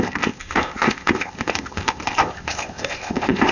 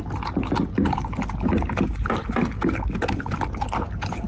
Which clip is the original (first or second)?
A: second